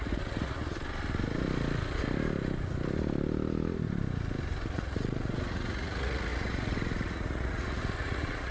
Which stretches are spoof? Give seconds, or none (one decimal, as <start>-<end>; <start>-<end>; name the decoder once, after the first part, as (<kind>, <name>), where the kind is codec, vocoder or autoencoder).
0.0-0.6 (vocoder, Vocos); 4.7-8.5